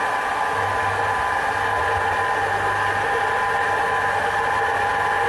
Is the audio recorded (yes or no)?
yes